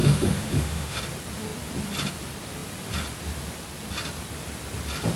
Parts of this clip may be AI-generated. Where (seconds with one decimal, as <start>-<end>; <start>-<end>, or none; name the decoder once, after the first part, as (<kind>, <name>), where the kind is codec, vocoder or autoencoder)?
0.0-1.0 (autoencoder, DAC-VAE)